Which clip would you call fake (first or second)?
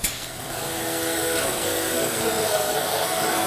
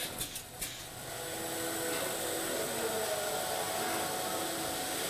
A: first